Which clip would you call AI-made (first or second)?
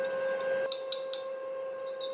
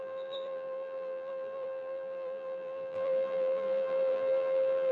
second